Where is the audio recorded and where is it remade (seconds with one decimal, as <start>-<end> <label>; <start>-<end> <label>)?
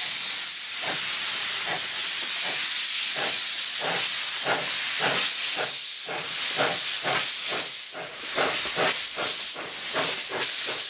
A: 0.0-10.9 recorded